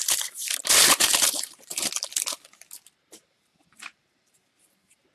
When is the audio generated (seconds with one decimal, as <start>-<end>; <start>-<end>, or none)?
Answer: 0.0-2.1; 3.0-5.1